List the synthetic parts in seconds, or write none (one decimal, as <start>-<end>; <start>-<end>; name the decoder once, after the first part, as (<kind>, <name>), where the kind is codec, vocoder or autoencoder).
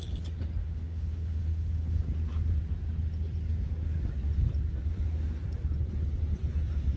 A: 0.6-2.0 (autoencoder, DAC-VAE)